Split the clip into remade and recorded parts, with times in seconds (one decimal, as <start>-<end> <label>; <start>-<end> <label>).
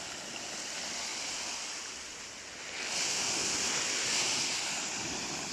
0.0-5.5 recorded